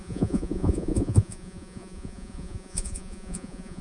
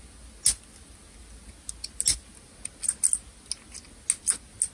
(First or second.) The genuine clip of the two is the second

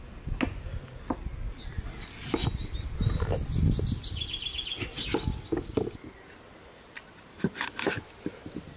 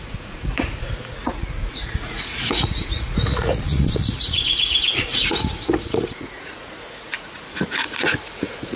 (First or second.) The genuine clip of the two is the first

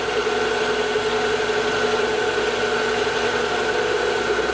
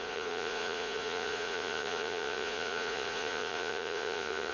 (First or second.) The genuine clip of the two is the first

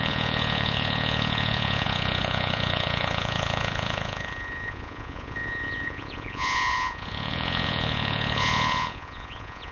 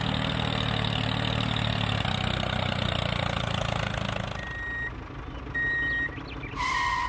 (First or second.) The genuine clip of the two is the second